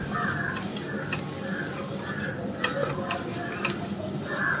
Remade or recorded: recorded